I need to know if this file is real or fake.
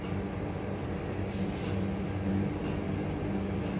real